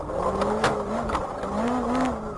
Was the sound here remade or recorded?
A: recorded